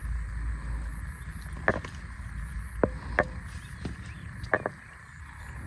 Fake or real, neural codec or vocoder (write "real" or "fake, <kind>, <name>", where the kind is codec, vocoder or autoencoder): real